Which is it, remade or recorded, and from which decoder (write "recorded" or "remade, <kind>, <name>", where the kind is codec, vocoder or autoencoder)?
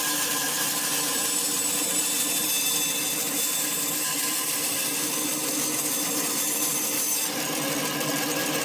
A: remade, vocoder, BigVGAN v2